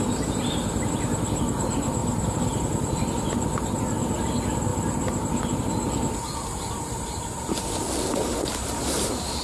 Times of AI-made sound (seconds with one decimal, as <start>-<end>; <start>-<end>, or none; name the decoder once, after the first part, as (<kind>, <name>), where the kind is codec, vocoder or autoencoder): none